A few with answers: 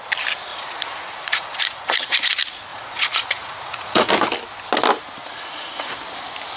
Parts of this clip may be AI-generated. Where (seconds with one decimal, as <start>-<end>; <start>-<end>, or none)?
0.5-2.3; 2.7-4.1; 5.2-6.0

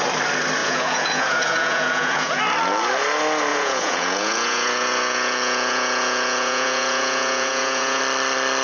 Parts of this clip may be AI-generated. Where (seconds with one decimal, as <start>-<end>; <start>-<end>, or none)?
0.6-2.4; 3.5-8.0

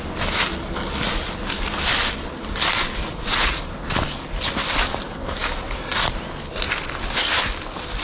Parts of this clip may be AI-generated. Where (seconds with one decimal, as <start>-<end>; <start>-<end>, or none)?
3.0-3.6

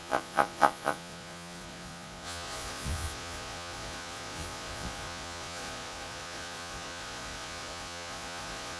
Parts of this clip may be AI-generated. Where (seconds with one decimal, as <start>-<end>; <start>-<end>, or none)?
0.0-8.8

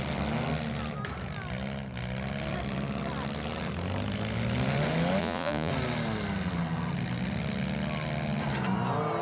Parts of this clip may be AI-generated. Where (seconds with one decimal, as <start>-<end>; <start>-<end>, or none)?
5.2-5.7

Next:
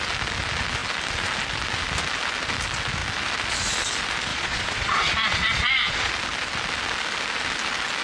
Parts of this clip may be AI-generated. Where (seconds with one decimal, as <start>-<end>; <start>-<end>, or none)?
4.3-6.1

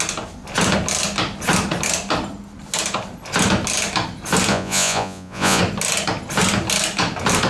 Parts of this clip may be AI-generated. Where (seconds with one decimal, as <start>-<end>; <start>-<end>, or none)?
4.5-5.6